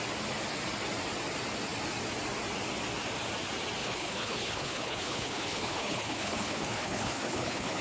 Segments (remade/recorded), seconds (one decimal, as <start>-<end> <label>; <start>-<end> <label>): 0.0-3.8 recorded; 3.8-7.8 remade